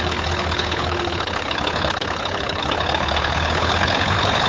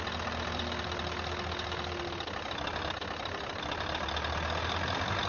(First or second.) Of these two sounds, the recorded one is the second